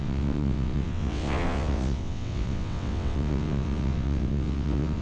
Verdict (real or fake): fake